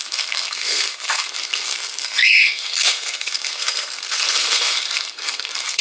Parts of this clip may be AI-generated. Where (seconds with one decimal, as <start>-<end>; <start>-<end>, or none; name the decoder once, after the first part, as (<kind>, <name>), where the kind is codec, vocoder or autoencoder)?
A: 0.0-5.8 (codec, SNAC)